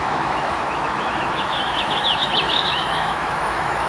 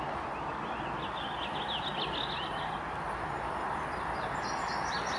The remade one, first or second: first